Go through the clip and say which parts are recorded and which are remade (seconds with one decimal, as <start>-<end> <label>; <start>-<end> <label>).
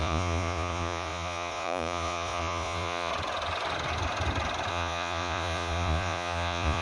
0.0-3.1 remade; 3.1-4.7 recorded; 4.7-6.8 remade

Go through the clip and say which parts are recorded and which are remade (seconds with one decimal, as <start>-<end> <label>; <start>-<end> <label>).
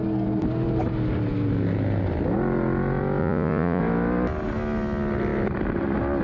0.0-3.2 recorded; 3.2-3.8 remade; 3.8-6.2 recorded